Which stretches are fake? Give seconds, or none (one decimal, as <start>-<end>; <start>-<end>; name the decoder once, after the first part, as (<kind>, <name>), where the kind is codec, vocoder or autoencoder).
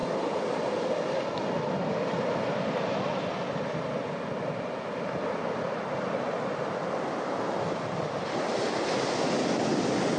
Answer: none